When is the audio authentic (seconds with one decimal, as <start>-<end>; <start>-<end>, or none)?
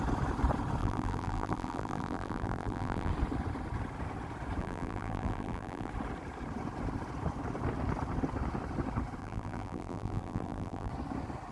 0.0-0.8; 3.1-4.6; 5.9-9.2; 10.9-11.5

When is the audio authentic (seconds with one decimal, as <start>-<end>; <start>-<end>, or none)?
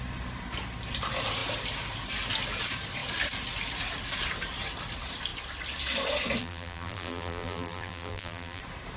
0.0-6.4; 8.6-9.0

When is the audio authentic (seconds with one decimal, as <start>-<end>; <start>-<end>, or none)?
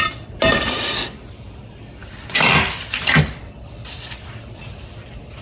none